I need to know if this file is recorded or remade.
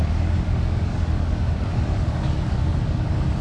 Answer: remade